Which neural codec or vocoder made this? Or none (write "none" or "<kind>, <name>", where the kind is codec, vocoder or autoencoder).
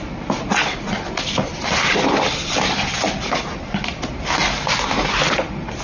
none